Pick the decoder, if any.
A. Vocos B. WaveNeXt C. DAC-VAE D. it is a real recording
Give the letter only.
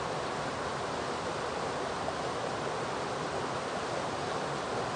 D